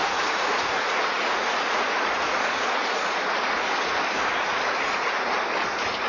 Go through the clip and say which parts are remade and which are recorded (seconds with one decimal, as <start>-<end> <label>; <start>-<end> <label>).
0.0-3.7 remade; 3.7-4.3 recorded; 4.3-5.4 remade; 5.4-6.1 recorded